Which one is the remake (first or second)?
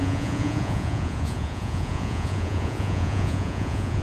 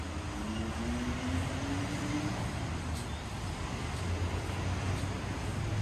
first